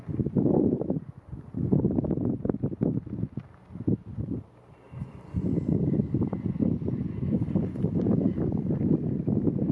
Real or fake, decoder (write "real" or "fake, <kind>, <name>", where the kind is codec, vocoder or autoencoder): real